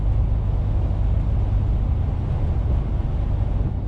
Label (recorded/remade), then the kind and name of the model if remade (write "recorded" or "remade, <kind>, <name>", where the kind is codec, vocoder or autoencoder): recorded